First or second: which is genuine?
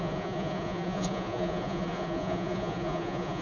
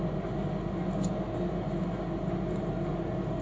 second